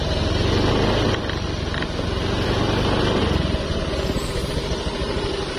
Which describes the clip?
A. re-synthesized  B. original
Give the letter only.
B